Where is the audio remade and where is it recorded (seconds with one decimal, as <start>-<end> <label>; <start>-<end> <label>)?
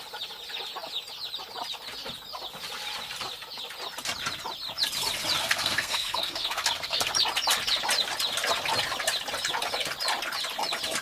0.0-5.4 recorded; 5.4-7.1 remade; 7.1-11.0 recorded